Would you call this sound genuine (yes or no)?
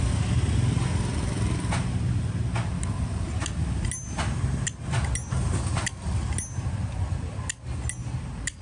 yes